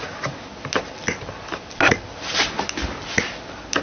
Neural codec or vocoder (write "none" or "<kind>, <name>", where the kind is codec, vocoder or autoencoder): none